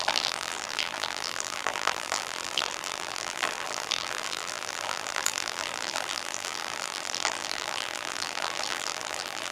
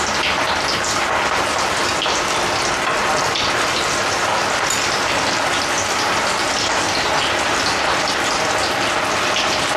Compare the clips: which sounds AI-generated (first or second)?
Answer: first